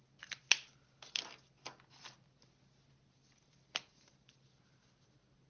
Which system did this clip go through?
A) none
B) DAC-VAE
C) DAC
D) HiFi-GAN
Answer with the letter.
A